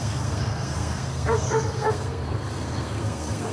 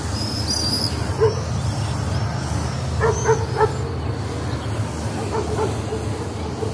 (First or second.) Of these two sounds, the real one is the second